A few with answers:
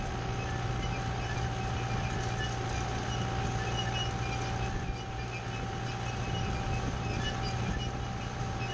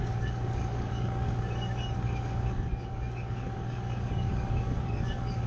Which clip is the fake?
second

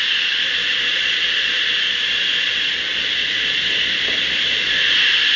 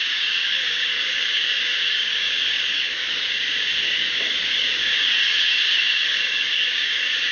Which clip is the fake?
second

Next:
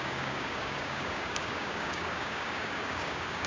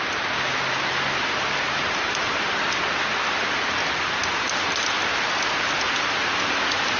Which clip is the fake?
first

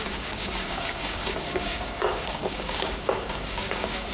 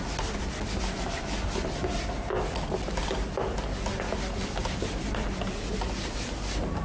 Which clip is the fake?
first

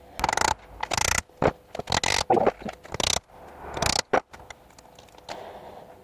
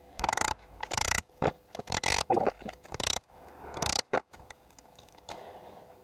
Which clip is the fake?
second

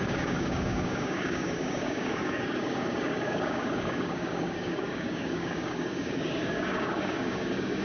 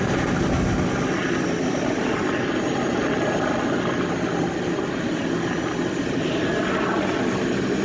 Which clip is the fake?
first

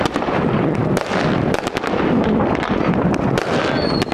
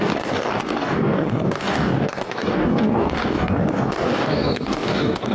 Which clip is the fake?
second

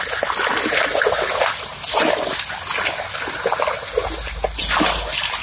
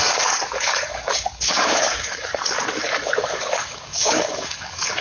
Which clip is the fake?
second